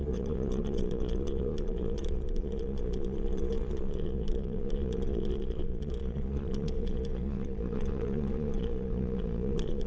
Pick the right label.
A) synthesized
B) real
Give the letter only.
A